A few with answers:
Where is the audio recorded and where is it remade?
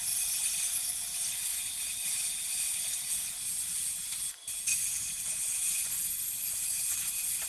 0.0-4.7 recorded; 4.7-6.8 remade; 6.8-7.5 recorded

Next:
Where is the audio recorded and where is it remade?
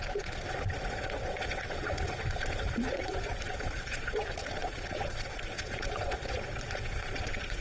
0.0-7.6 remade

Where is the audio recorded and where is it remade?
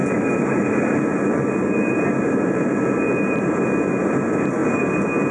0.0-5.3 remade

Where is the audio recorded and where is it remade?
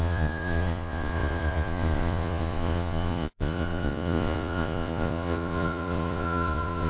0.0-6.9 remade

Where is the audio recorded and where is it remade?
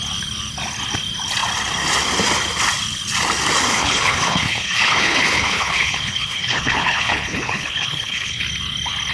0.0-3.7 recorded; 3.7-8.4 remade; 8.4-9.1 recorded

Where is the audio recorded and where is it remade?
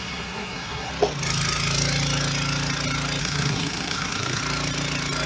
0.0-0.9 remade; 0.9-3.2 recorded; 3.2-4.4 remade; 4.4-5.3 recorded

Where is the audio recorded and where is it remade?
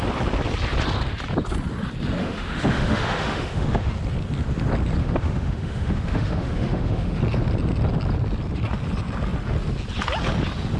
0.0-2.2 recorded; 2.2-3.9 remade; 3.9-5.0 recorded; 5.0-7.2 remade; 7.2-10.8 recorded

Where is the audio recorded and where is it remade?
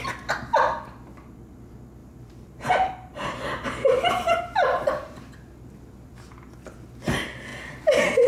0.0-2.0 recorded; 2.0-5.3 remade; 5.3-8.3 recorded